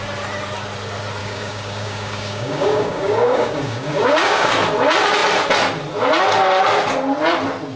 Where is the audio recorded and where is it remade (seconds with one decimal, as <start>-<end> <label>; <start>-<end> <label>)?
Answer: 0.0-1.2 recorded; 1.2-4.5 remade; 4.5-7.8 recorded